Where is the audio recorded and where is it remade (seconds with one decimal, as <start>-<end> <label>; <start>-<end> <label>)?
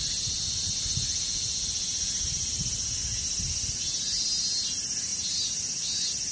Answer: 0.0-6.3 recorded